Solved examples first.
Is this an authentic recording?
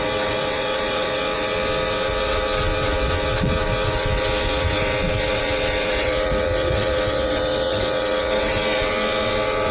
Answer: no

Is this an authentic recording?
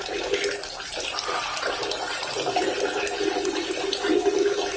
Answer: yes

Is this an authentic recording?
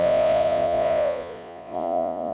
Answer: no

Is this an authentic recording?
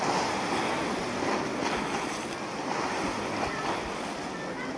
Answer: yes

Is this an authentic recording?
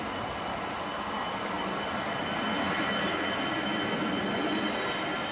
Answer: yes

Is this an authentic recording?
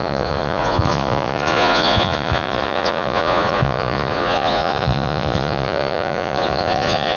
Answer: no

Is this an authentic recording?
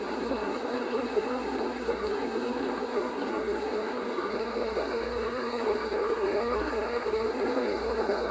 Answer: no